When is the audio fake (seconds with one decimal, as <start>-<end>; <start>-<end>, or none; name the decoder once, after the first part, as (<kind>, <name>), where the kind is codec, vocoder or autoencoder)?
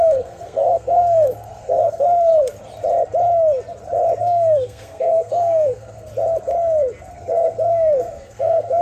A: 0.0-2.3 (codec, SNAC); 4.2-6.1; 7.1-8.8